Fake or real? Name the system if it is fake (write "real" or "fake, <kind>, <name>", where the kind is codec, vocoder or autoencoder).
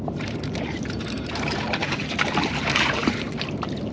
fake, vocoder, BigVGAN v2